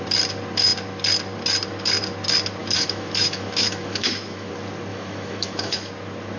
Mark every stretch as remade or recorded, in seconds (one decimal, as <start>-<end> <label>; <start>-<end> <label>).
0.0-2.6 recorded; 2.6-4.5 remade; 4.5-4.9 recorded; 4.9-5.9 remade; 5.9-6.4 recorded